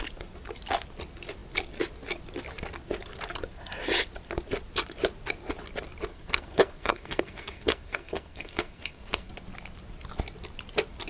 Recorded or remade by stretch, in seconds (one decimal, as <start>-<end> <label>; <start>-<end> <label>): 0.0-6.1 recorded; 6.1-9.3 remade; 9.3-11.1 recorded